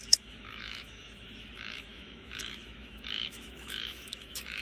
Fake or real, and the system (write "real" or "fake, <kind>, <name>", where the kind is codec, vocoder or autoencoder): fake, autoencoder, DAC-VAE